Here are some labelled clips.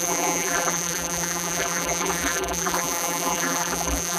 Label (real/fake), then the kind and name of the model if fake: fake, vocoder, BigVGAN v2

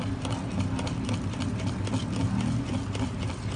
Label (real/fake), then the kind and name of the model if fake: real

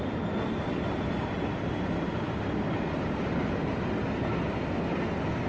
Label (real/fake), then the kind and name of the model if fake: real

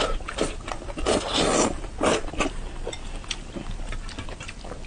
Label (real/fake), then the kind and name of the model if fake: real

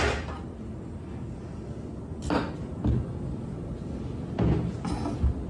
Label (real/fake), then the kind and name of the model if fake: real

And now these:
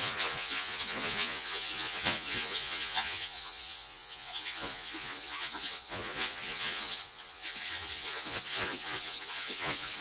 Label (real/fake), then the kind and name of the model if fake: fake, vocoder, Vocos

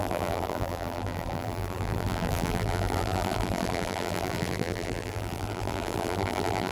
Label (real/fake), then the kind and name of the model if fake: fake, vocoder, BigVGAN v2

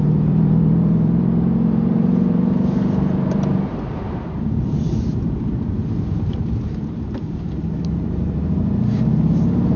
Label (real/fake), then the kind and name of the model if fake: fake, vocoder, BigVGAN v2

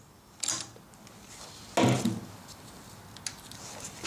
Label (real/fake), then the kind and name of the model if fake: real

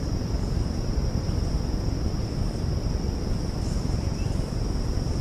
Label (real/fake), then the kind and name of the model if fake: real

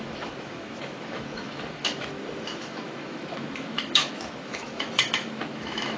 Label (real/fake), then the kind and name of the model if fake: fake, autoencoder, DAC-VAE